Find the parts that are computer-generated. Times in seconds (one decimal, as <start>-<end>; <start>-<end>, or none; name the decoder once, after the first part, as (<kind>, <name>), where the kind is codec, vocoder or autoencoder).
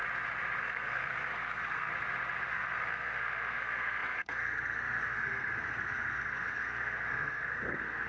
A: 0.6-1.9 (codec, SNAC); 2.5-8.1